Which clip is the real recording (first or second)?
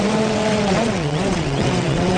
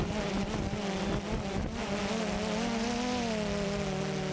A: second